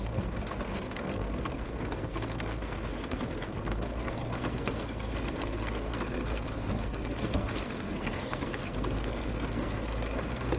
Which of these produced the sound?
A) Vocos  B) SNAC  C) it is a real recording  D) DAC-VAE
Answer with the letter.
B